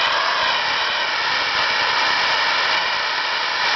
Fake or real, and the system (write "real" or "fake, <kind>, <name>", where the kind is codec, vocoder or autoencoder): real